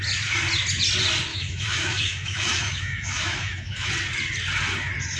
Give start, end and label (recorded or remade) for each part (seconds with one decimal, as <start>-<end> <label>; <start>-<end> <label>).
0.0-1.3 recorded; 1.3-3.9 remade; 3.9-5.2 recorded